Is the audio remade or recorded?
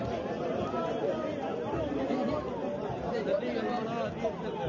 recorded